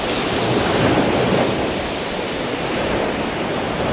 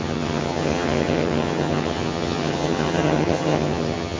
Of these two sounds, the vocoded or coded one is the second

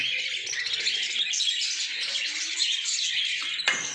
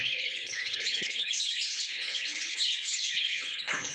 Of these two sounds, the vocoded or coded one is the second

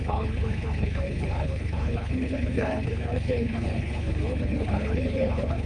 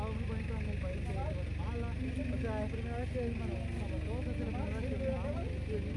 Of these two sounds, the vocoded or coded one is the first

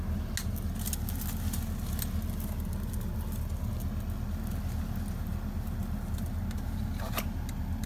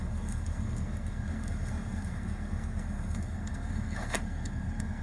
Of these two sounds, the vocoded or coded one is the second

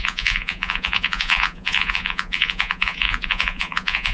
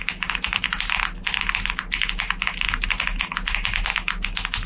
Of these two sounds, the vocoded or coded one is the first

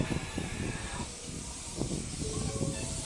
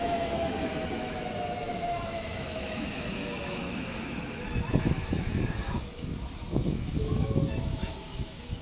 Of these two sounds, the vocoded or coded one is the second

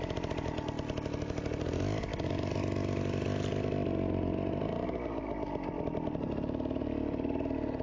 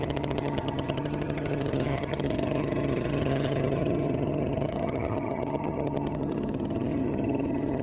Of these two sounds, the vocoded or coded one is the second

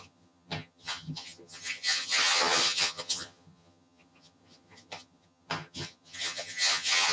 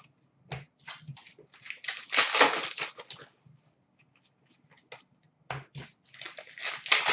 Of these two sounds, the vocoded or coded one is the first